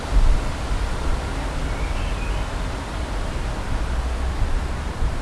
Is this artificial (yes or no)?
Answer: no